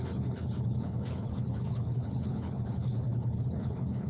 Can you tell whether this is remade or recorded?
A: remade